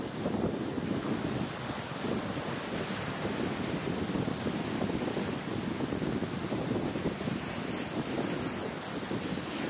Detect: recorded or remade recorded